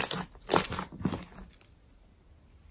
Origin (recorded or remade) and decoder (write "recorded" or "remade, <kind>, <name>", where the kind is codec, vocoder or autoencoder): recorded